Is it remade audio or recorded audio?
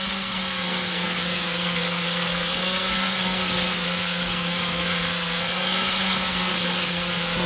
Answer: remade